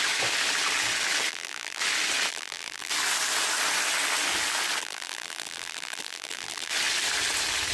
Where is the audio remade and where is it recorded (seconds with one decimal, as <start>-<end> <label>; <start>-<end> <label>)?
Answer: 0.0-1.3 recorded; 1.3-1.8 remade; 1.8-2.3 recorded; 2.3-2.9 remade; 2.9-4.8 recorded; 4.8-6.7 remade; 6.7-7.7 recorded